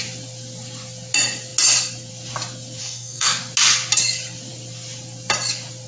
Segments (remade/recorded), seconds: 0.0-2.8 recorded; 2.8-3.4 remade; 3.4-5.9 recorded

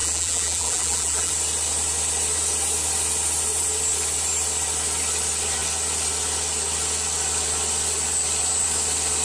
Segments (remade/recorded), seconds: 0.0-1.3 remade; 1.3-9.2 recorded